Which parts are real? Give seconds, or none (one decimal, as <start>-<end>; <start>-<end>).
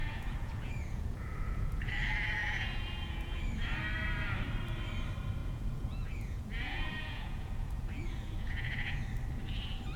1.9-2.4; 3.4-5.4; 9.0-10.0